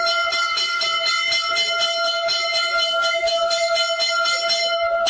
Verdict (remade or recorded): recorded